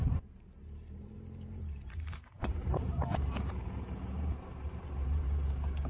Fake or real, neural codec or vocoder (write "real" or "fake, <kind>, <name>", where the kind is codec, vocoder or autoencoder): fake, vocoder, BigVGAN v2